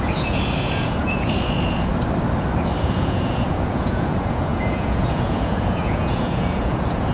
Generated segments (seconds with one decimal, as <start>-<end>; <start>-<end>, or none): 0.0-1.9; 2.8-7.1

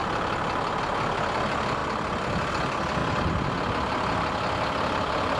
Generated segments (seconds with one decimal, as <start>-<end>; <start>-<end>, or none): 3.0-3.5

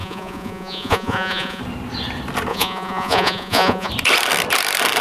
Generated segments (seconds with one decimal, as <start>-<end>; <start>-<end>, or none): 0.0-1.6; 2.5-3.9

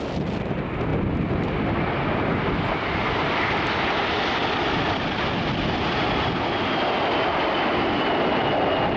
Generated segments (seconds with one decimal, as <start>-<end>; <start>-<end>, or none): none

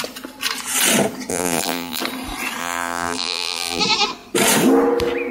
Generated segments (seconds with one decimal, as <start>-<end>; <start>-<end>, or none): 1.3-2.0; 2.6-3.8